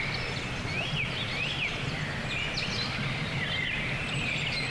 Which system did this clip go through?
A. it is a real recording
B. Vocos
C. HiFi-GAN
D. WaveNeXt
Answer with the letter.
A